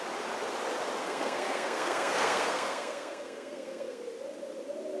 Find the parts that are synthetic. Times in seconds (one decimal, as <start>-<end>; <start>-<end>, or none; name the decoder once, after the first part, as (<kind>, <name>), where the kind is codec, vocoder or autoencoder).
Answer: 1.0-4.0 (codec, SNAC)